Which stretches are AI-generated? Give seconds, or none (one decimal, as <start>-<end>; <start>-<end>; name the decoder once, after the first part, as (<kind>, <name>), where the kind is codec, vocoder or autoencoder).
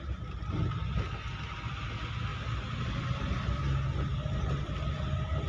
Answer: none